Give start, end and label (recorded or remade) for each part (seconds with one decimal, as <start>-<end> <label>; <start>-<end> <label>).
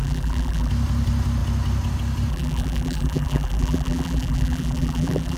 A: 0.0-0.7 remade; 0.7-2.3 recorded; 2.3-5.4 remade